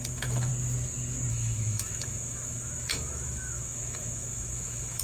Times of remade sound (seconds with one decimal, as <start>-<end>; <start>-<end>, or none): 0.0-0.5; 1.3-5.0